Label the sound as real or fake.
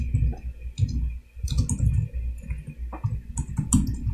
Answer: real